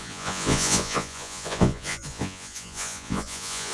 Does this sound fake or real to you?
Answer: fake